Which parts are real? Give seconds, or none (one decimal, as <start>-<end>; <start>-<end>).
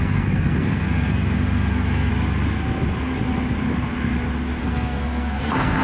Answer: 2.1-4.6